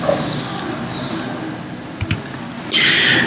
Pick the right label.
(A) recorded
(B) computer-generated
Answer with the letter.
A